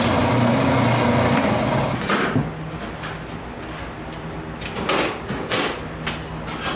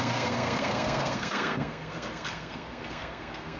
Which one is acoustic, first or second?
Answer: first